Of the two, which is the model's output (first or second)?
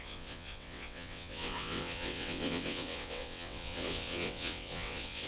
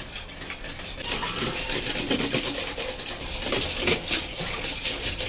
first